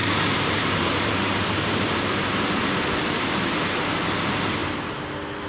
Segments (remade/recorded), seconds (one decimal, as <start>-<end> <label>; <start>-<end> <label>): 0.0-2.5 remade; 2.5-5.5 recorded